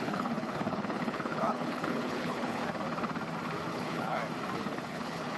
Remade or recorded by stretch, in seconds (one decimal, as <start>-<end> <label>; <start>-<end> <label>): 0.0-2.6 remade; 2.6-3.7 recorded; 3.7-4.2 remade; 4.2-4.9 recorded; 4.9-5.4 remade